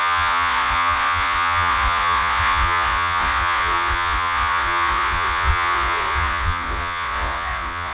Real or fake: fake